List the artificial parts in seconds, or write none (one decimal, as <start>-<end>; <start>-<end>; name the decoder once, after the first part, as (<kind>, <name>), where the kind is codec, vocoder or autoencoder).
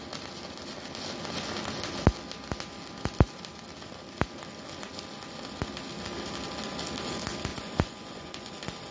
7.5-8.5 (vocoder, Vocos)